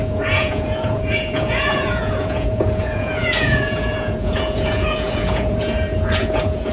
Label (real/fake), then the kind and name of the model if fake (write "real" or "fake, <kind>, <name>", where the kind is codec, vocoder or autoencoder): fake, vocoder, Vocos